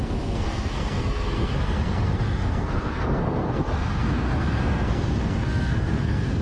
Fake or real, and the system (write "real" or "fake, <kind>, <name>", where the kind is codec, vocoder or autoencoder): fake, codec, SNAC